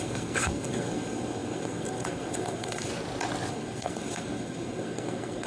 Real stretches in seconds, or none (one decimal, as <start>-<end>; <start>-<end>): 2.9-3.5